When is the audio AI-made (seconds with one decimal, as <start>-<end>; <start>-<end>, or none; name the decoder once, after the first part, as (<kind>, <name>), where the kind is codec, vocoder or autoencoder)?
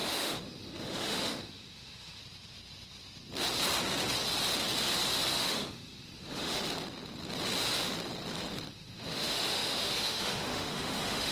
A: 0.0-2.2 (autoencoder, DAC-VAE); 5.3-6.6; 8.7-11.3